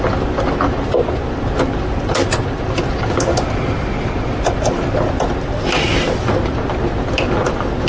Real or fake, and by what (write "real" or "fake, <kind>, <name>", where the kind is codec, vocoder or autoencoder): real